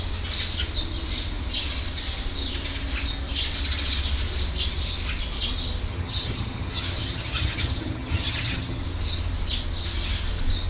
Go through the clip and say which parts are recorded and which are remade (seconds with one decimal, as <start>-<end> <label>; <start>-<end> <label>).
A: 0.0-5.9 recorded; 5.9-8.8 remade; 8.8-10.7 recorded